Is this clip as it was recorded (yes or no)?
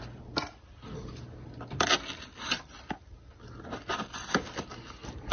yes